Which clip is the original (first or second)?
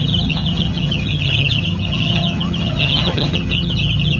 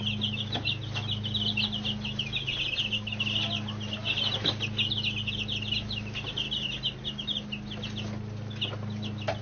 second